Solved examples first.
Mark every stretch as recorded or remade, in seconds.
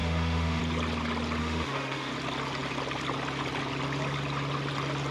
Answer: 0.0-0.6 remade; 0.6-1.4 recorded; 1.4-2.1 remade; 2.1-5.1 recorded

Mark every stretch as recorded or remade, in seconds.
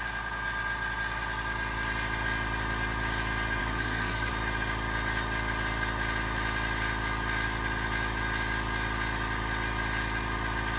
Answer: 0.0-3.6 recorded; 3.6-4.3 remade; 4.3-10.8 recorded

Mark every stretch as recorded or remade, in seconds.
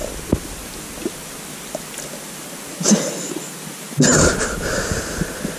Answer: 0.0-5.6 recorded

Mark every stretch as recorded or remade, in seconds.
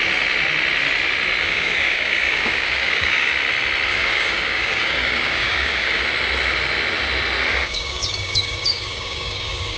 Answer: 0.0-1.4 recorded; 1.4-3.3 remade; 3.3-3.9 recorded; 3.9-6.0 remade; 6.0-7.5 recorded; 7.5-9.8 remade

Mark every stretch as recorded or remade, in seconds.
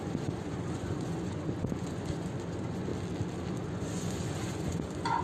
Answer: 0.0-2.9 remade; 2.9-3.5 recorded; 3.5-5.2 remade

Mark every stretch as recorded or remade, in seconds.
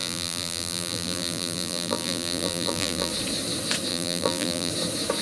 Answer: 0.0-3.1 remade; 3.1-3.9 recorded; 3.9-4.7 remade; 4.7-5.2 recorded